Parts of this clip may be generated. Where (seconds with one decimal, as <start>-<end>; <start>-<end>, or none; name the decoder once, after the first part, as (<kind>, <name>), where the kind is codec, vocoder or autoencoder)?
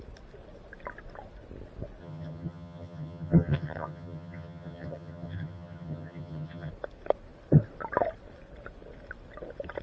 2.0-6.7 (vocoder, HiFi-GAN)